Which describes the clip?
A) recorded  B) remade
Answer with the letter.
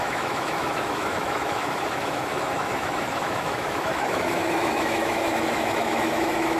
B